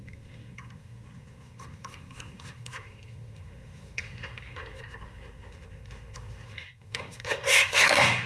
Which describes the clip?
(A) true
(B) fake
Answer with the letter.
B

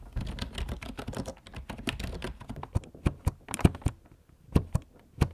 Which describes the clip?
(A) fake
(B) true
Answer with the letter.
B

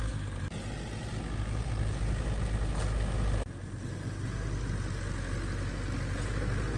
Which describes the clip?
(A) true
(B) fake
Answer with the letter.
A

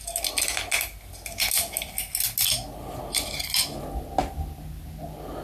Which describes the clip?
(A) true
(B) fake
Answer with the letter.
A